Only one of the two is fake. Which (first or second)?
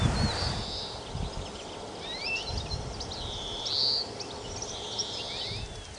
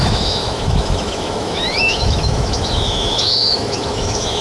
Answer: second